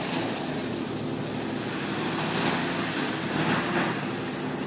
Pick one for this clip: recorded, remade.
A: recorded